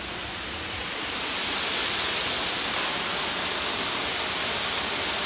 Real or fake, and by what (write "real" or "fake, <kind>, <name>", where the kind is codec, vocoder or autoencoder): real